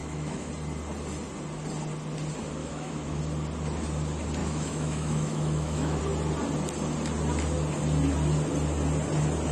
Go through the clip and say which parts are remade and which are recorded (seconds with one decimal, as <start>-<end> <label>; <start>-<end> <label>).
0.0-0.5 remade; 0.5-2.6 recorded; 2.6-3.2 remade; 3.2-4.4 recorded; 4.4-6.0 remade; 6.0-9.5 recorded